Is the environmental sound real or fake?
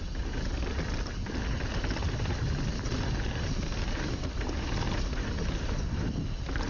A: real